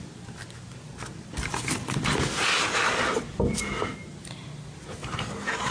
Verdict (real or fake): real